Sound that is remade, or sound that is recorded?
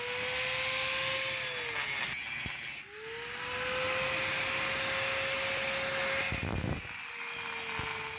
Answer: recorded